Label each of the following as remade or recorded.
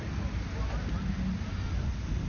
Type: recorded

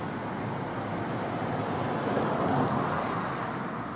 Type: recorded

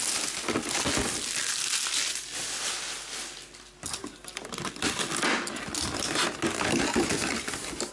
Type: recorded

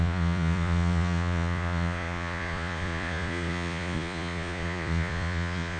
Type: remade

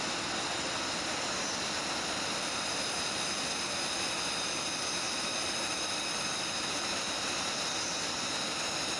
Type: recorded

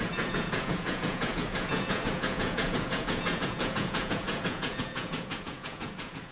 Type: remade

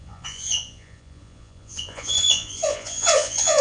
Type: remade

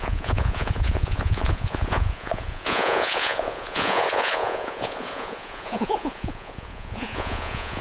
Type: remade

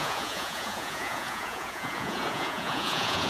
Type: remade